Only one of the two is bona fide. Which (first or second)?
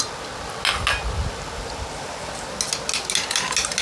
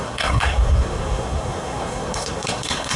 first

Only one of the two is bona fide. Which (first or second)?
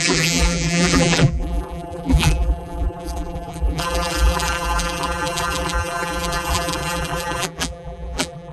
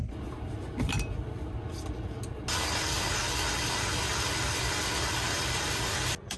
second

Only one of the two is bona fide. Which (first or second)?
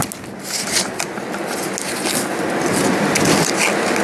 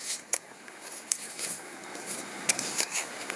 first